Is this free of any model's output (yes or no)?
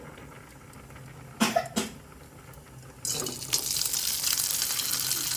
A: yes